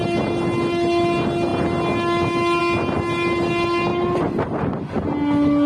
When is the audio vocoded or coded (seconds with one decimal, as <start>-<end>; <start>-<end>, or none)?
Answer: 3.9-4.7